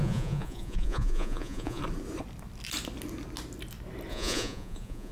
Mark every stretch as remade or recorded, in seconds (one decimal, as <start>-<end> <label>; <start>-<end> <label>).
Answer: 0.0-1.8 remade; 1.8-4.1 recorded; 4.1-5.1 remade